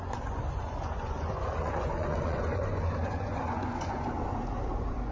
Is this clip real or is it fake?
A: fake